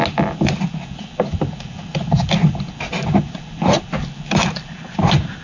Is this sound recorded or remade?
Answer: recorded